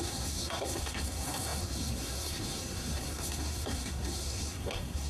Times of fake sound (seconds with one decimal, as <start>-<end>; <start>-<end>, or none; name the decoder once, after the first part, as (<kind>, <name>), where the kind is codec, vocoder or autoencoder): 0.0-5.1 (codec, SNAC)